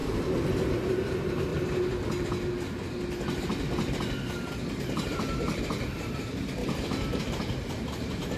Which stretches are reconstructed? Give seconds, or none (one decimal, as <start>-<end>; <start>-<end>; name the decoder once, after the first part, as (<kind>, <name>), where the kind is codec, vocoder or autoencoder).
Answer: 0.7-1.5 (vocoder, BigVGAN v2); 6.1-6.6; 7.2-8.4